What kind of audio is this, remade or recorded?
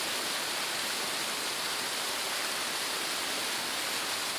recorded